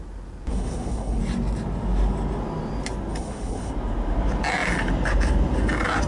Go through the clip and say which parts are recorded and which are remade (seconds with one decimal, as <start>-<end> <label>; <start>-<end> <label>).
0.0-0.5 recorded; 0.5-1.2 remade; 1.2-3.1 recorded; 3.1-3.7 remade; 3.7-6.1 recorded